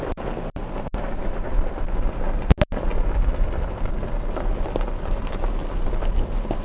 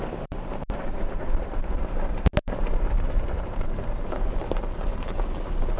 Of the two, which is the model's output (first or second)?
second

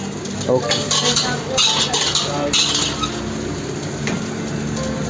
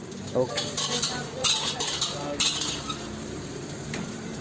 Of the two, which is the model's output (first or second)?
second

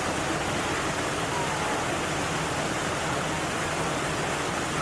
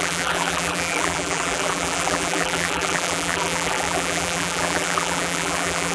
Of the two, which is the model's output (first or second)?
second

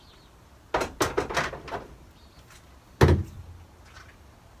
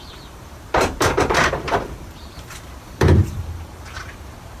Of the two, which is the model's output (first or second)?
second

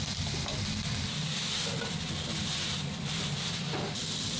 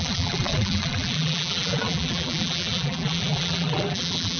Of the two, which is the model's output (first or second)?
second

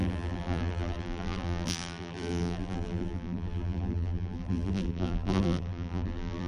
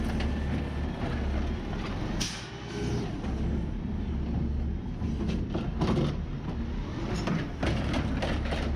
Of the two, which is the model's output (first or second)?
first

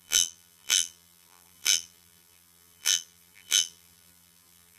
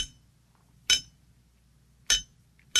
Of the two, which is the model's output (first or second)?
first